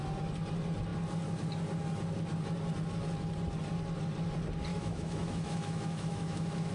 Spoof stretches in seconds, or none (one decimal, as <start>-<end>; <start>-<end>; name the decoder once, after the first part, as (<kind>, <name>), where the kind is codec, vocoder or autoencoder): 4.7-6.7 (autoencoder, DAC-VAE)